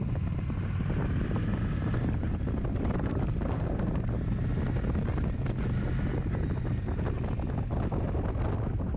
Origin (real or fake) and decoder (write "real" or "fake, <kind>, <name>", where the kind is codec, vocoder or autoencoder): real